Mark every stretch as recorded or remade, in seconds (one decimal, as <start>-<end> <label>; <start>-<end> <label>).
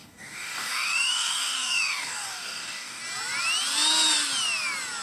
0.0-3.0 remade; 3.0-5.0 recorded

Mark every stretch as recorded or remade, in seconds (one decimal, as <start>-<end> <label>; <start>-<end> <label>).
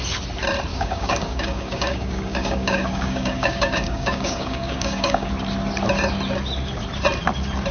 0.0-0.7 recorded; 0.7-5.3 remade; 5.3-7.7 recorded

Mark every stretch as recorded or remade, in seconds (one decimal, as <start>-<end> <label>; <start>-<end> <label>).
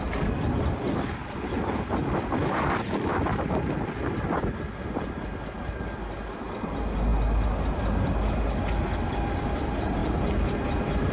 0.0-11.1 recorded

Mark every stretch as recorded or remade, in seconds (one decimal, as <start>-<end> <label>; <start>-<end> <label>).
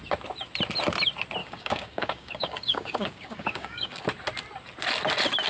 0.0-1.4 recorded; 1.4-4.0 remade; 4.0-5.5 recorded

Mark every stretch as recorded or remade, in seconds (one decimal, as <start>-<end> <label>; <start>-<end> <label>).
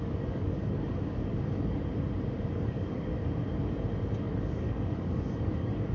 0.0-1.8 remade; 1.8-2.5 recorded; 2.5-3.1 remade; 3.1-4.2 recorded; 4.2-5.9 remade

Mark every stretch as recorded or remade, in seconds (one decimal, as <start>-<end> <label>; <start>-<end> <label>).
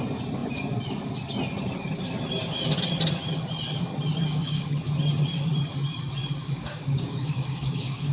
0.0-4.3 recorded; 4.3-4.8 remade; 4.8-6.4 recorded; 6.4-8.1 remade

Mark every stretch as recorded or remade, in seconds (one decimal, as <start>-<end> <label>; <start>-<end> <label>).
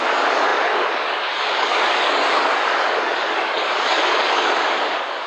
0.0-5.3 remade